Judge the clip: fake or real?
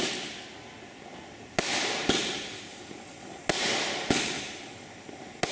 real